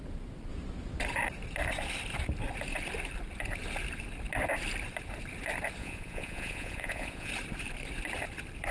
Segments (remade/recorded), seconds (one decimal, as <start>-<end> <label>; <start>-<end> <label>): 0.0-5.8 recorded; 5.8-7.3 remade; 7.3-8.7 recorded